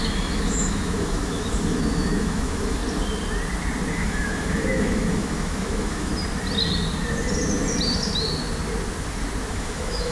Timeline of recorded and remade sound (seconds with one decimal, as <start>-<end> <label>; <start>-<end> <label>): 0.0-2.8 remade; 2.8-3.9 recorded; 3.9-6.1 remade; 6.1-9.5 recorded; 9.5-10.1 remade